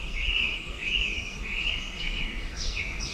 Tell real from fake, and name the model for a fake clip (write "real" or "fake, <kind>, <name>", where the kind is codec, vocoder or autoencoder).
fake, codec, SNAC